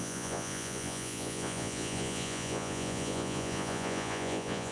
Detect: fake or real fake